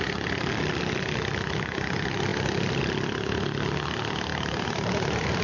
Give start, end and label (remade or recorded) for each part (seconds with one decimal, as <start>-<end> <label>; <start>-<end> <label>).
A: 0.0-4.3 recorded; 4.3-5.4 remade